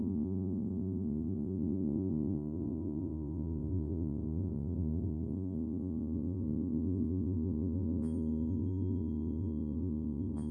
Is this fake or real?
fake